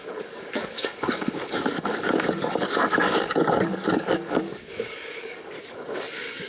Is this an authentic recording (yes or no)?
no